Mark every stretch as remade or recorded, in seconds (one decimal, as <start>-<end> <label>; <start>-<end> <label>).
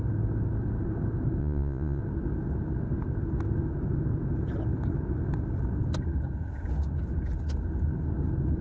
0.0-1.4 recorded; 1.4-2.0 remade; 2.0-8.6 recorded